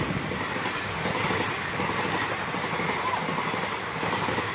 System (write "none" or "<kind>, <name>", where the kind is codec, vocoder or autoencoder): none